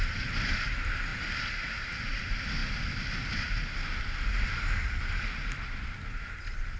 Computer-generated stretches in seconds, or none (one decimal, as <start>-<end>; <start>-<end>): none